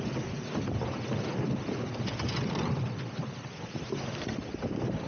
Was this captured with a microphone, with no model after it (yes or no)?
yes